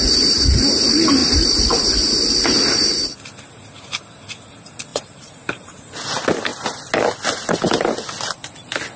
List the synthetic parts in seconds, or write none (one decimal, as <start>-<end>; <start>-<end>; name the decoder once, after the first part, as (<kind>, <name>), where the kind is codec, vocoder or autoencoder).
4.9-5.9 (vocoder, BigVGAN v2)